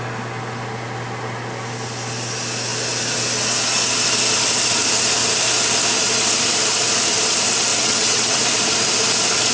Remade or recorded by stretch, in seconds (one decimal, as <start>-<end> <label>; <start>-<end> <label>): 0.0-7.7 recorded; 7.7-8.4 remade; 8.4-9.5 recorded